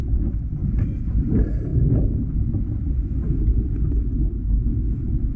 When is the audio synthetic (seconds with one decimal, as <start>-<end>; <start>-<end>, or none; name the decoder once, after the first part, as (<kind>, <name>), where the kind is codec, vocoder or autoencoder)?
none